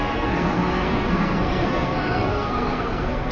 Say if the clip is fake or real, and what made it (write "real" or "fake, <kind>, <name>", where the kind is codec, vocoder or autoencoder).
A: fake, codec, SNAC